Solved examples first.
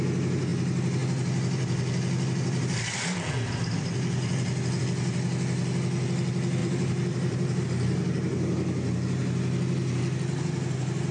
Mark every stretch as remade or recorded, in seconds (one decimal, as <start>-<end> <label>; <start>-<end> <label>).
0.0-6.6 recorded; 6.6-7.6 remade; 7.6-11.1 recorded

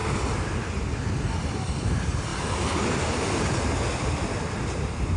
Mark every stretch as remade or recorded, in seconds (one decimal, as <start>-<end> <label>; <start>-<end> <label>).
0.0-5.2 recorded

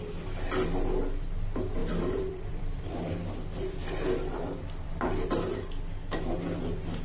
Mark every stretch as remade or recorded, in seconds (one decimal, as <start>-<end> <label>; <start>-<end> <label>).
0.0-1.8 recorded; 1.8-5.3 remade; 5.3-7.0 recorded

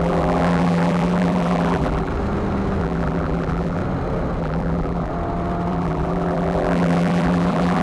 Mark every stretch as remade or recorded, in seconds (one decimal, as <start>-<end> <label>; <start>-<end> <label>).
0.0-2.1 remade; 2.1-2.8 recorded; 2.8-3.8 remade; 3.8-4.4 recorded; 4.4-5.1 remade; 5.1-5.7 recorded; 5.7-7.8 remade

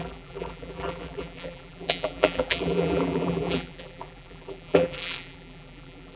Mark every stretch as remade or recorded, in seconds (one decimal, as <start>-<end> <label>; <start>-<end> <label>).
0.0-6.2 remade